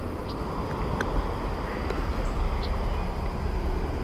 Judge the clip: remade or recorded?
recorded